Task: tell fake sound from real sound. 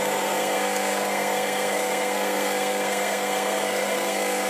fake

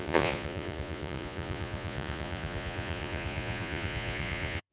fake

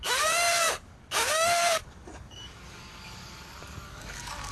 fake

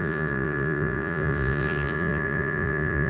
fake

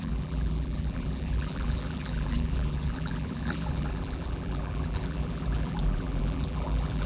fake